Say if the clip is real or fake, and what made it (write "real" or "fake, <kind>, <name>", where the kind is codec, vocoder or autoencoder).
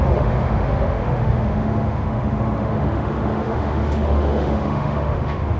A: fake, autoencoder, DAC-VAE